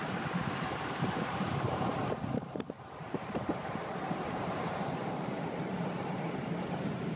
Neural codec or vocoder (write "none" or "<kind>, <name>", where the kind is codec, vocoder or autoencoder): vocoder, BigVGAN v2